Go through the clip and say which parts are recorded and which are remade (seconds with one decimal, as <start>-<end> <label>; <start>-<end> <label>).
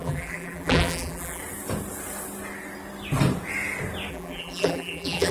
0.0-1.4 remade; 1.4-4.1 recorded; 4.1-5.3 remade